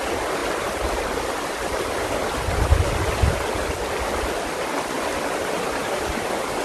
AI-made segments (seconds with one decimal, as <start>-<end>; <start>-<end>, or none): 5.8-6.6

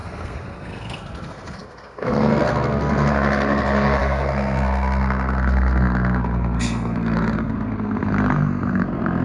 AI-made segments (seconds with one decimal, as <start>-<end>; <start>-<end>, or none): 0.0-9.2

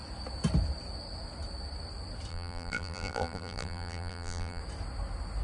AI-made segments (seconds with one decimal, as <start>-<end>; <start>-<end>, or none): 2.3-4.6

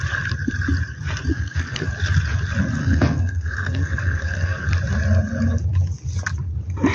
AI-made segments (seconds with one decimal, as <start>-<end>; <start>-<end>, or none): 1.3-1.9; 2.8-4.7